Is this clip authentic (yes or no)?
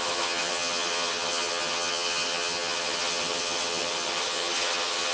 no